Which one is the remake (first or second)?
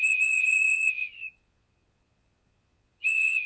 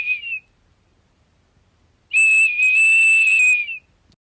first